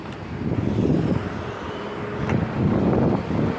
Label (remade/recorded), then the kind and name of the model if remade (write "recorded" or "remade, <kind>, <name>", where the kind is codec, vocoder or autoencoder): recorded